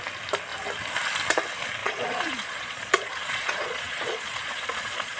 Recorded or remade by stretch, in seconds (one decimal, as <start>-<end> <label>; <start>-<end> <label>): 0.0-1.8 recorded; 1.8-5.2 remade